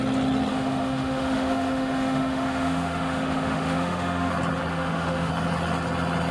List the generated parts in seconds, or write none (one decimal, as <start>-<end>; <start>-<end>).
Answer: 0.5-4.3; 4.7-5.3